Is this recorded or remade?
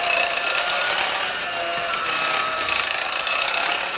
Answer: remade